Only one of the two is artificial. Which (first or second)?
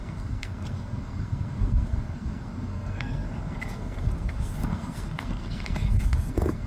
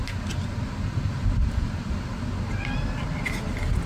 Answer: first